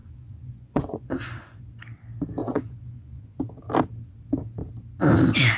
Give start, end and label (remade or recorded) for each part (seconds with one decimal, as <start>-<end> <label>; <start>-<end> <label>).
0.0-1.6 remade; 1.6-2.4 recorded; 2.4-3.4 remade; 3.4-5.6 recorded